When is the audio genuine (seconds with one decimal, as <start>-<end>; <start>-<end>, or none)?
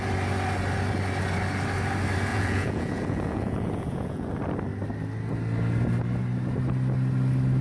0.0-2.3; 4.3-7.6